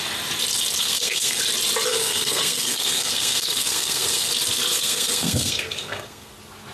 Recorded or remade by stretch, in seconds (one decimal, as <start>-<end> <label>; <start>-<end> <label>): 0.0-0.8 recorded; 0.8-1.4 remade; 1.4-1.9 recorded; 1.9-4.3 remade; 4.3-4.7 recorded; 4.7-6.3 remade; 6.3-6.7 recorded